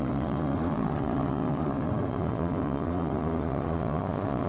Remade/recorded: remade